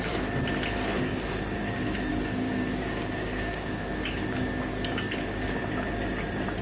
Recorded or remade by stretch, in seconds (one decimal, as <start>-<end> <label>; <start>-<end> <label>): 0.0-2.1 recorded; 2.1-5.6 remade; 5.6-6.6 recorded